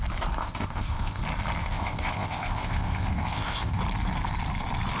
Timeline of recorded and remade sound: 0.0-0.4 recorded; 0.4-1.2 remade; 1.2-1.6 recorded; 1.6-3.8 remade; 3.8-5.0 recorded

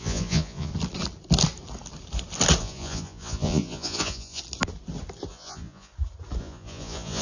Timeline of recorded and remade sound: 0.0-0.7 remade; 0.7-2.6 recorded; 2.6-4.4 remade; 4.4-5.3 recorded; 5.3-5.9 remade; 5.9-6.4 recorded; 6.4-7.2 remade

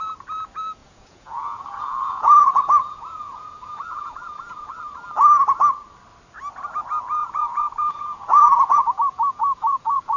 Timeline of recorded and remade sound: 0.0-0.8 recorded; 0.8-4.8 remade; 4.8-7.2 recorded; 7.2-10.2 remade

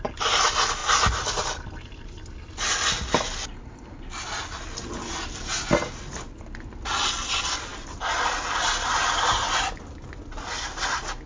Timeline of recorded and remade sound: 0.0-11.3 recorded

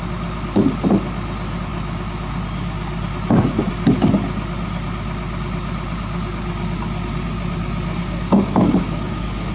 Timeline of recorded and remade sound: 0.0-7.9 recorded; 7.9-9.5 remade

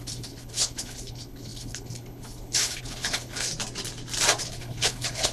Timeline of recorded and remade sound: 0.0-3.5 remade; 3.5-4.4 recorded; 4.4-5.3 remade

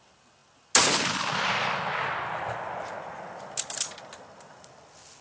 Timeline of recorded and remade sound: 0.0-5.2 recorded

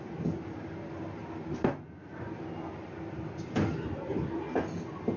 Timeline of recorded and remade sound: 0.0-5.2 recorded